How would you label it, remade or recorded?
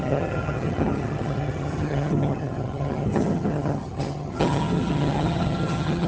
remade